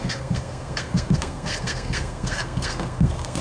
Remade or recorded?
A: remade